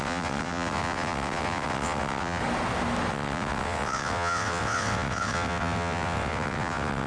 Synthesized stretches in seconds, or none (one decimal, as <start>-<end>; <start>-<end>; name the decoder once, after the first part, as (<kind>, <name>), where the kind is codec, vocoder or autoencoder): 0.0-2.4 (vocoder, WaveNeXt); 3.1-7.1